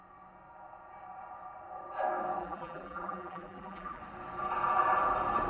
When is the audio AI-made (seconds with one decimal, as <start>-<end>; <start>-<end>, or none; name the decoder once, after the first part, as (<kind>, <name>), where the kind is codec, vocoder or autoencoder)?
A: 2.4-4.0 (vocoder, BigVGAN v2)